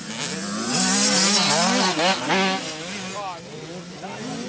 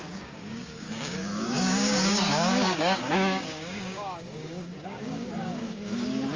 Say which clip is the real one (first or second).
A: first